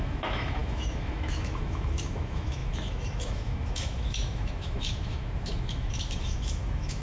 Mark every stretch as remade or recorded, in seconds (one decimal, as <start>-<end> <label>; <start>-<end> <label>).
0.0-7.0 remade

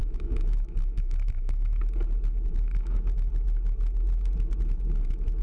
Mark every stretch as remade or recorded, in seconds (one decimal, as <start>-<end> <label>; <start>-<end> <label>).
0.0-1.8 remade; 1.8-2.5 recorded; 2.5-3.3 remade; 3.3-5.4 recorded

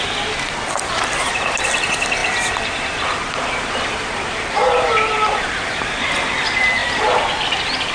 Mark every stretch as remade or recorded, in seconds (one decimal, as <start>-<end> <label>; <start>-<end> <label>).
0.0-7.9 recorded

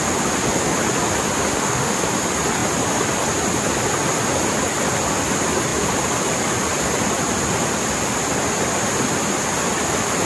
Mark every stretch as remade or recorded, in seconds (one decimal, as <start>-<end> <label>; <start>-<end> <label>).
0.0-1.5 recorded; 1.5-2.1 remade; 2.1-10.3 recorded

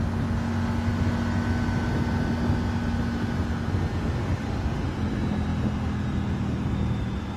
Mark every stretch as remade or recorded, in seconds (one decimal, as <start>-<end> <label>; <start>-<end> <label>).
0.0-4.2 recorded; 4.2-4.8 remade; 4.8-7.4 recorded